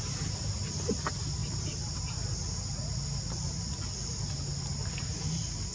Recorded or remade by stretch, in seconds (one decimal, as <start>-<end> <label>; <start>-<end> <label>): 0.0-5.7 recorded